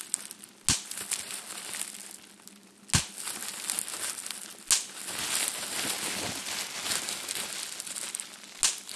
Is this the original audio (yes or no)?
yes